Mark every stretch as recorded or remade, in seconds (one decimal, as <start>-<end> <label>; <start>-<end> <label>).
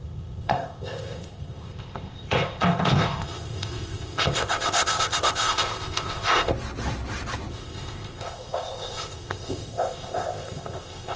0.0-6.5 remade; 6.5-7.5 recorded; 7.5-11.2 remade